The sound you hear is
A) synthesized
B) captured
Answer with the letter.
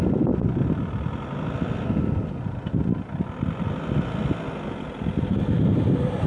B